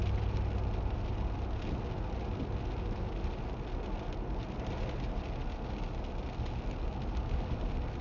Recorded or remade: recorded